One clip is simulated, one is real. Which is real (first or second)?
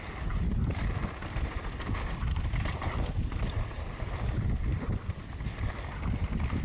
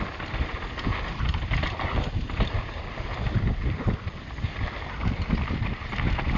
second